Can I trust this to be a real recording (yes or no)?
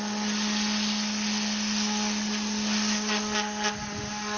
yes